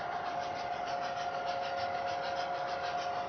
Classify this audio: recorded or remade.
recorded